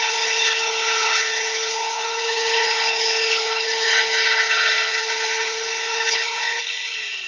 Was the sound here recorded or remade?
remade